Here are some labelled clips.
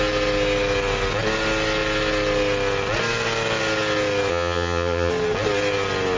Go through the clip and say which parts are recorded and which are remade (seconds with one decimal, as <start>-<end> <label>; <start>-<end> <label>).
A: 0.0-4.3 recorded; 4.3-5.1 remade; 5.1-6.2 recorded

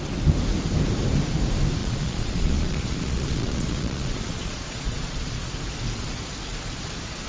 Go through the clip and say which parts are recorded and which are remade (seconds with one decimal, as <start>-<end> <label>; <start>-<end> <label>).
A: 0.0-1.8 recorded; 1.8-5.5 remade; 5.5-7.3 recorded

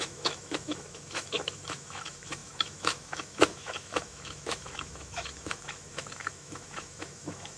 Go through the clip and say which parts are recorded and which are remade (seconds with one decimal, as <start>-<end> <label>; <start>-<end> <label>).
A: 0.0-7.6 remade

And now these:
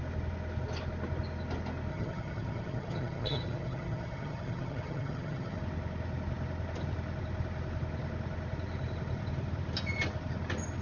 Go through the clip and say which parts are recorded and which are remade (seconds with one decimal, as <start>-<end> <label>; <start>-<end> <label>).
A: 0.0-1.9 recorded; 1.9-5.6 remade; 5.6-10.8 recorded

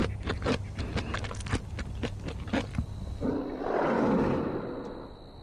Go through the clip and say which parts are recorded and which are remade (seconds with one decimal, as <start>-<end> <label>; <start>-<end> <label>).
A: 0.0-5.4 recorded

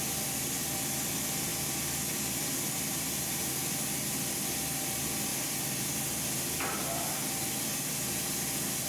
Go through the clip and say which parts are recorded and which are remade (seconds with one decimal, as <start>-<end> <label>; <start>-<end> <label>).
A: 0.0-8.9 recorded

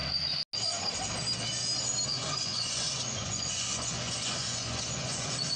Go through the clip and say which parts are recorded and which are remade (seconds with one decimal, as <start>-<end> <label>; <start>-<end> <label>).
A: 0.0-2.1 recorded; 2.1-5.6 remade